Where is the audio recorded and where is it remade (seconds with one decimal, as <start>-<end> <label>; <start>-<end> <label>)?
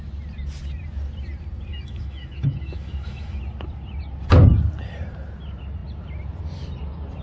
0.0-1.7 recorded; 1.7-3.4 remade; 3.4-7.2 recorded